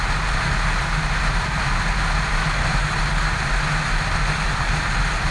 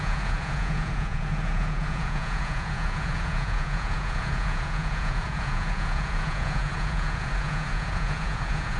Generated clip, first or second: second